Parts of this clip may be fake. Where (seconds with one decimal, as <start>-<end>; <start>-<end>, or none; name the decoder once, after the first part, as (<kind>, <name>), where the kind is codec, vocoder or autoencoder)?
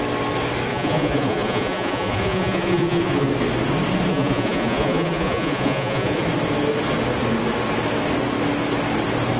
0.7-3.3 (vocoder, Vocos); 4.1-6.2